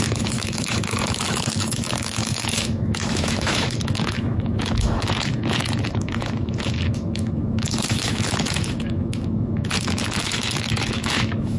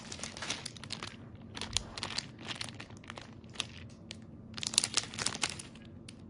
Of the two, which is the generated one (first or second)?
first